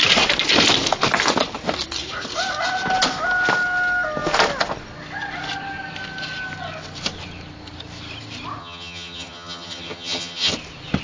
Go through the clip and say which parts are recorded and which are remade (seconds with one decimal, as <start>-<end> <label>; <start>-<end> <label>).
0.0-8.6 recorded; 8.6-10.5 remade; 10.5-11.0 recorded

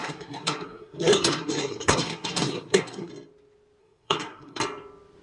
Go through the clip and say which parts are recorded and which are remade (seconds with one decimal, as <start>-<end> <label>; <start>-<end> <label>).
0.0-3.1 remade; 3.1-3.8 recorded; 3.8-4.6 remade; 4.6-5.2 recorded